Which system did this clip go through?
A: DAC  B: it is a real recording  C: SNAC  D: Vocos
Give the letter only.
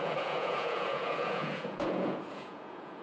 D